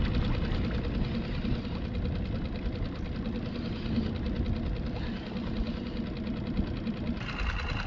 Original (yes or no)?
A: yes